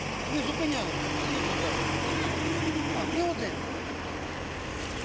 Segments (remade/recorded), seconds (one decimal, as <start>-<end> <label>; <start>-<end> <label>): 0.0-5.0 recorded